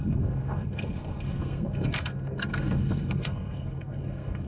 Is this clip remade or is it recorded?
remade